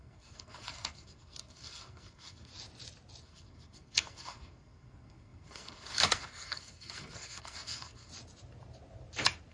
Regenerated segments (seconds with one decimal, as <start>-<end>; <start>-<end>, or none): 0.0-2.5; 3.2-8.1